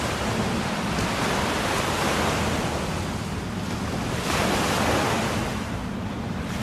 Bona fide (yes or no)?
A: yes